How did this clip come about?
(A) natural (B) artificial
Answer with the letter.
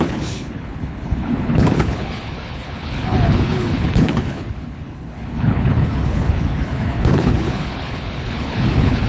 B